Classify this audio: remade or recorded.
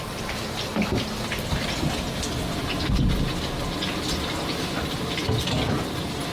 recorded